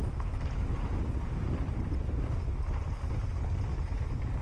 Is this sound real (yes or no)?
yes